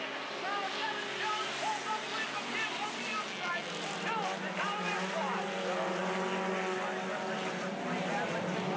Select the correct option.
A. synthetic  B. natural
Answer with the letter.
B